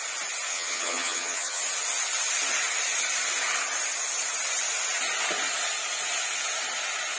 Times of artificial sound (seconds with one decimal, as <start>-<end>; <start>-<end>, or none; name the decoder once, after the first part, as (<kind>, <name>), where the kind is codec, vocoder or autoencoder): 0.5-1.6 (vocoder, HiFi-GAN)